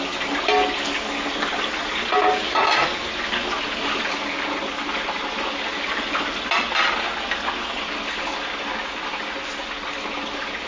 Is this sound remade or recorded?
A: recorded